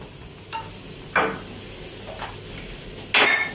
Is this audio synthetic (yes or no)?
no